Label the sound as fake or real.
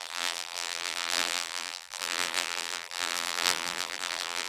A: fake